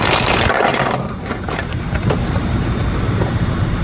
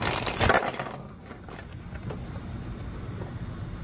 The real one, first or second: second